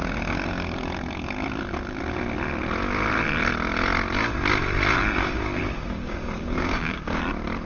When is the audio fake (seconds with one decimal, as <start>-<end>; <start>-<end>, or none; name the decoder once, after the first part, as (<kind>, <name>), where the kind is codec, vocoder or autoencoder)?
5.2-7.2 (codec, DAC)